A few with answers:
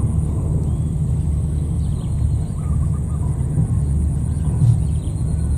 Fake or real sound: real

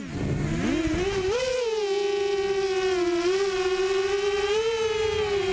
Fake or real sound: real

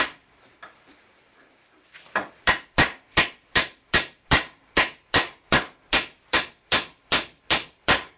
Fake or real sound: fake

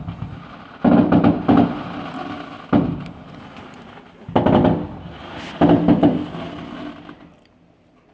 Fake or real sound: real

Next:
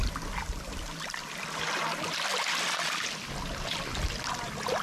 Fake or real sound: real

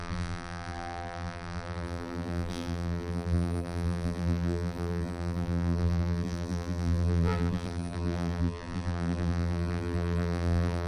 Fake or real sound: fake